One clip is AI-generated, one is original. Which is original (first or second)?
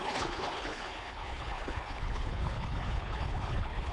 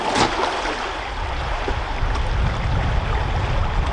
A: second